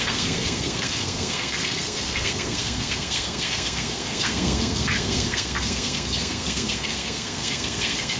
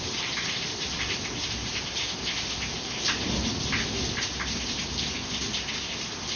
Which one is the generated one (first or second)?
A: first